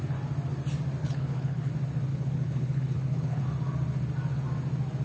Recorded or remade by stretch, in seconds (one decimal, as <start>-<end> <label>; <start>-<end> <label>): 0.0-1.0 recorded; 1.0-1.7 remade; 1.7-2.1 recorded; 2.1-3.4 remade; 3.4-5.0 recorded